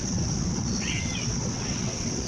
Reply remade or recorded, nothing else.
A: remade